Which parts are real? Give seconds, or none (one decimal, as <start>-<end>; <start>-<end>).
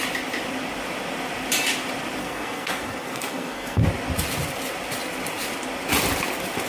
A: 0.0-2.2; 3.8-6.7